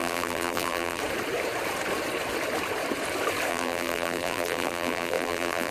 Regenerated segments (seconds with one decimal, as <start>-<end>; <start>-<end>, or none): 0.0-1.0; 3.5-5.7